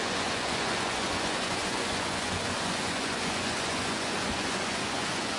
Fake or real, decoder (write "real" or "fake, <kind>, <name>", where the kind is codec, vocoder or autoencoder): fake, vocoder, Vocos